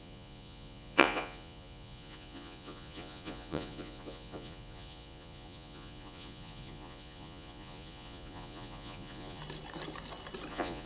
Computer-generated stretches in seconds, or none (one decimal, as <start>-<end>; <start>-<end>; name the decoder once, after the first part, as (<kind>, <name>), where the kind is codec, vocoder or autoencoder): 0.0-9.4 (vocoder, Vocos); 10.5-10.9